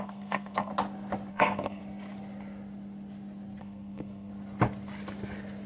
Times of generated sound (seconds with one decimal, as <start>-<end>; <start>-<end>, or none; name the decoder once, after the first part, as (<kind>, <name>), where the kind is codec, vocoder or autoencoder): 0.0-0.7 (codec, SNAC); 1.3-1.8; 3.6-4.3